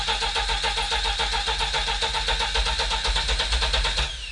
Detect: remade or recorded recorded